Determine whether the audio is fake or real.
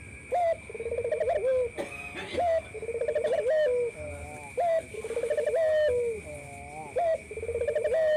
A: real